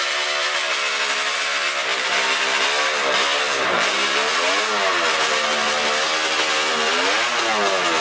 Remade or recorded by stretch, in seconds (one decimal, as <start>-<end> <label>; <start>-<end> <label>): 0.0-8.0 recorded